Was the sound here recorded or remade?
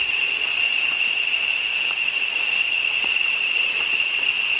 remade